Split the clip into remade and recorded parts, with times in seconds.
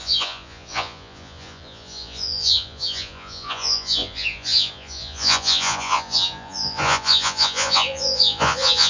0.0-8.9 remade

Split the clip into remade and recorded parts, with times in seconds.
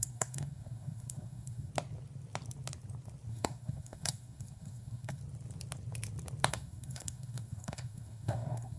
0.0-1.7 remade; 1.7-3.3 recorded; 3.3-5.2 remade; 5.2-6.5 recorded; 6.5-8.8 remade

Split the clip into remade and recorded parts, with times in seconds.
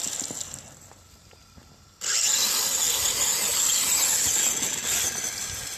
0.0-5.8 recorded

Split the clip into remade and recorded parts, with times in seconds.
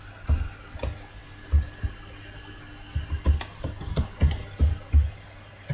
0.0-5.7 recorded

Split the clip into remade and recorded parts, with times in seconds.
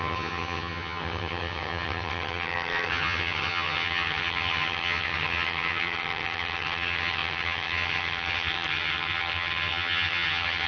0.0-10.7 remade